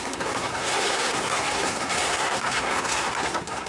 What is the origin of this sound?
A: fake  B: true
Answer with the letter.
A